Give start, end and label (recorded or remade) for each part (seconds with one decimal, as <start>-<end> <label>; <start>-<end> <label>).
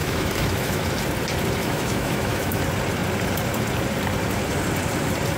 0.0-0.9 remade; 0.9-1.6 recorded; 1.6-2.6 remade; 2.6-5.4 recorded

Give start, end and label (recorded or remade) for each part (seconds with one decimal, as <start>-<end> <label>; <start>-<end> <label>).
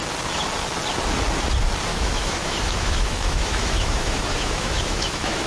0.0-1.9 recorded; 1.9-5.5 remade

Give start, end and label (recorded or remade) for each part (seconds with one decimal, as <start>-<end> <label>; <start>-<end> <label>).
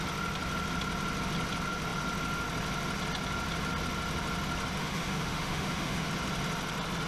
0.0-4.8 recorded; 4.8-6.1 remade; 6.1-7.1 recorded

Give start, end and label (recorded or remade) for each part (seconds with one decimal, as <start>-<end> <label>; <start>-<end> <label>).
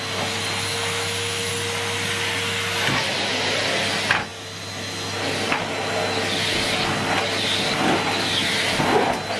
0.0-0.7 recorded; 0.7-1.5 remade; 1.5-9.4 recorded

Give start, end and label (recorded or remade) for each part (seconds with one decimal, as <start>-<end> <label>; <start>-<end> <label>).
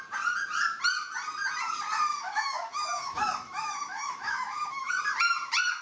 0.0-2.1 recorded; 2.1-4.9 remade; 4.9-5.8 recorded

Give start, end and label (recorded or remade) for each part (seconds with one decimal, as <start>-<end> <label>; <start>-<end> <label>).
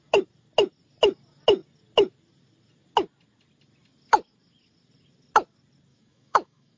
0.0-5.9 recorded; 5.9-6.8 remade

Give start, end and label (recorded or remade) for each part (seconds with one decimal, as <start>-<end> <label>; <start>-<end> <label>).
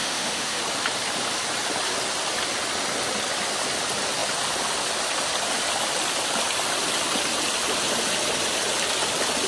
0.0-0.6 remade; 0.6-9.5 recorded